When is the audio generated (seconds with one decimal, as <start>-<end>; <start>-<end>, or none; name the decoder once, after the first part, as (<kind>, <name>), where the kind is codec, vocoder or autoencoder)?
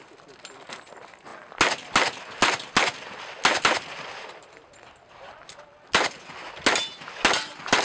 none